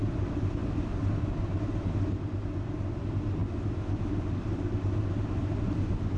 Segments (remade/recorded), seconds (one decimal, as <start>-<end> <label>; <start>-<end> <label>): 0.0-6.2 recorded

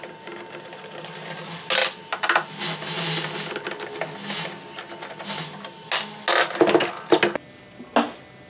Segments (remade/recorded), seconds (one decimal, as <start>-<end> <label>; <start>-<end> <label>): 0.0-8.5 recorded

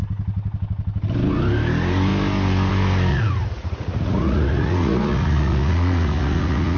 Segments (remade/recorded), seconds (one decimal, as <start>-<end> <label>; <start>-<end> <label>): 0.0-3.1 recorded; 3.1-6.8 remade

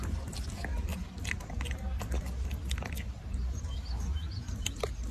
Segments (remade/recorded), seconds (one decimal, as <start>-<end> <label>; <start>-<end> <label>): 0.0-5.1 recorded

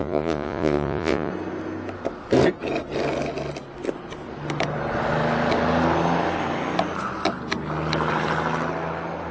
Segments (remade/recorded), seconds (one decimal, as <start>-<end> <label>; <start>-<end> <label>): 0.0-1.3 remade; 1.3-9.3 recorded